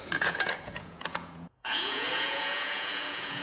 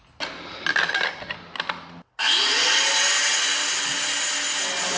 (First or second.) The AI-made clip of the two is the first